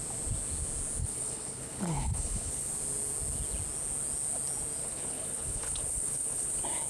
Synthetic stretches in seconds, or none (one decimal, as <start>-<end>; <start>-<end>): 1.0-2.7; 4.8-6.5